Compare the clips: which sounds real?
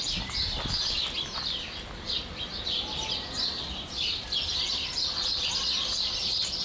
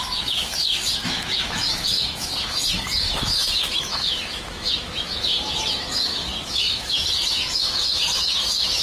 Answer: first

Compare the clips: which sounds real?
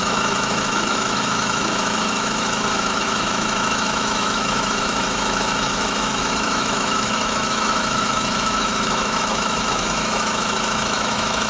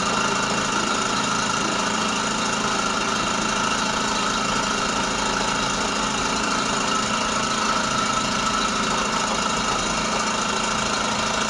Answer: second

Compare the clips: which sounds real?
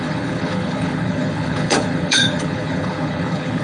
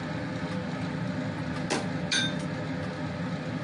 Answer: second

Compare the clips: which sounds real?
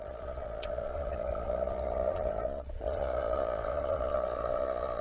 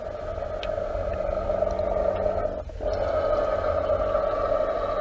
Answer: second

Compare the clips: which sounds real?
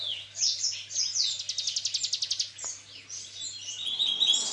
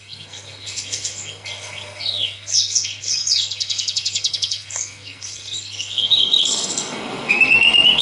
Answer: first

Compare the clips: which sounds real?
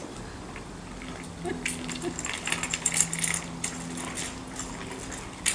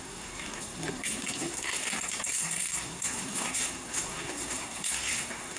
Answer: first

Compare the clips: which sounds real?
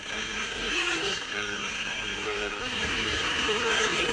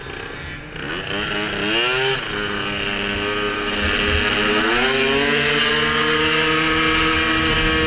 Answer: second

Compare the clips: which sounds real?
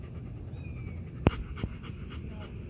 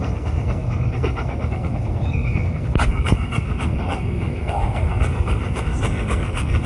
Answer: first